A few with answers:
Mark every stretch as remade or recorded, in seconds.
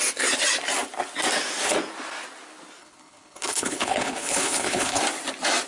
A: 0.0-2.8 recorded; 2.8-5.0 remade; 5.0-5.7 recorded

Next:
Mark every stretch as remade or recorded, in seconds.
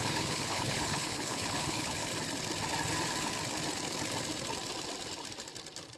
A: 0.0-2.1 remade; 2.1-6.0 recorded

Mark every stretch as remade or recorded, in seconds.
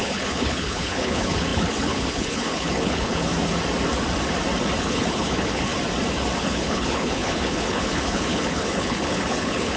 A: 0.0-3.3 remade; 3.3-4.8 recorded; 4.8-5.7 remade; 5.7-6.4 recorded; 6.4-9.8 remade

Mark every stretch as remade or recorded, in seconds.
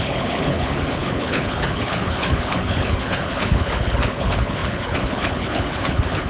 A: 0.0-6.3 remade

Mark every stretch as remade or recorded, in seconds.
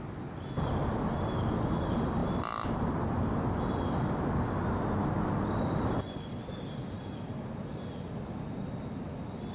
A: 0.0-9.5 recorded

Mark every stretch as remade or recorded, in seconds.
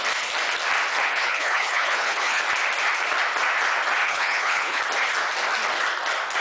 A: 0.0-1.0 recorded; 1.0-2.4 remade; 2.4-4.0 recorded; 4.0-4.8 remade; 4.8-6.4 recorded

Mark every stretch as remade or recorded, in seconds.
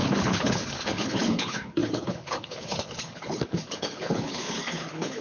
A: 0.0-5.2 remade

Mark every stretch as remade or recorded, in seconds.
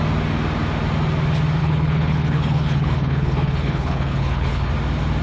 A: 0.0-1.6 recorded; 1.6-4.7 remade; 4.7-5.2 recorded